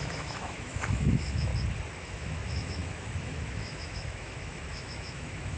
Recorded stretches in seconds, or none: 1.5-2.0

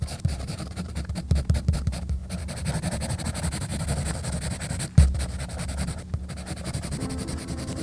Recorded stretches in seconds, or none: 2.2-3.2; 3.7-6.6

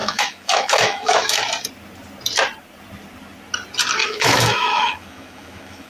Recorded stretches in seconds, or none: 1.4-4.0

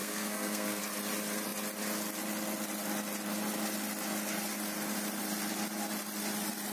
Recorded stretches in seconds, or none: 0.8-6.7

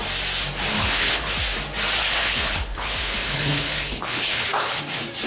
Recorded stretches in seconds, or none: 0.0-0.7; 1.3-2.0; 4.8-5.3

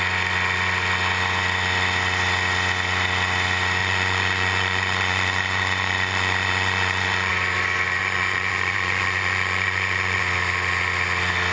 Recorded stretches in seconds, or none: 0.0-3.8; 7.3-8.0; 10.2-11.5

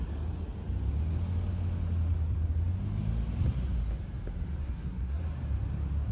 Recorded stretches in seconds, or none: 0.0-4.6; 5.2-6.1

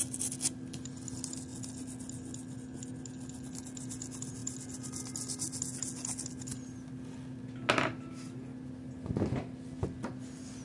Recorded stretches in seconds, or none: 0.0-10.6